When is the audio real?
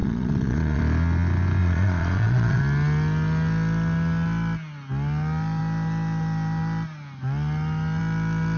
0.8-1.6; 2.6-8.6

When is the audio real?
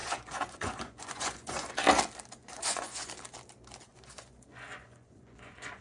1.7-2.4; 3.1-3.9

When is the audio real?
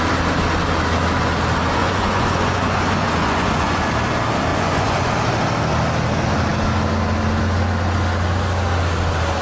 0.0-1.8; 3.8-4.5; 5.1-9.4